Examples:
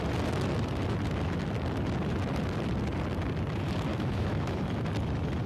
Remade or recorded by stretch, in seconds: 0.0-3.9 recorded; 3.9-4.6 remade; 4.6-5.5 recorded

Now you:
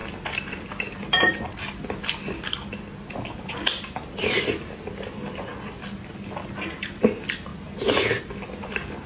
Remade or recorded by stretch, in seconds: 0.0-9.1 recorded

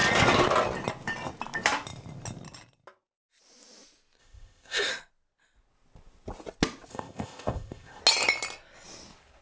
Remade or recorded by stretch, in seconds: 0.0-4.2 recorded; 4.2-4.9 remade; 4.9-6.9 recorded; 6.9-8.0 remade; 8.0-9.4 recorded

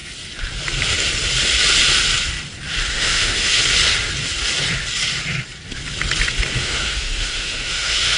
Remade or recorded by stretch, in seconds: 0.0-2.9 recorded; 2.9-3.6 remade; 3.6-6.6 recorded; 6.6-8.2 remade

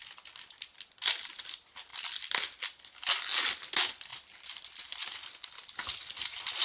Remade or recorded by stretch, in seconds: 0.0-6.6 recorded